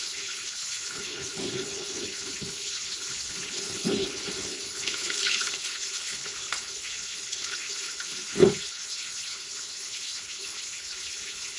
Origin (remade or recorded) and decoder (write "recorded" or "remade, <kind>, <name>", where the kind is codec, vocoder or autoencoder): remade, codec, HILCodec